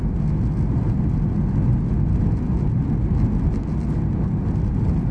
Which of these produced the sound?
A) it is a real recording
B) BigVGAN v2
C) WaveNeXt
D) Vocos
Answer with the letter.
A